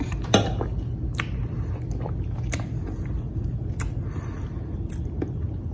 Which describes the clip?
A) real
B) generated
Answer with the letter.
A